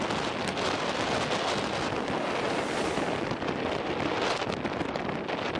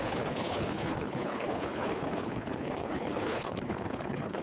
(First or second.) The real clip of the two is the first